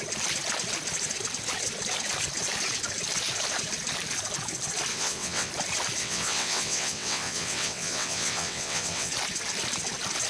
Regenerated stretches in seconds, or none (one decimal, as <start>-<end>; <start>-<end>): 4.9-5.5; 6.0-9.1